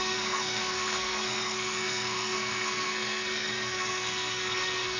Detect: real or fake fake